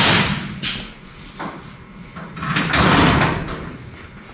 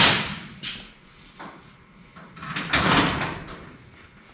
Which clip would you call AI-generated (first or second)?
second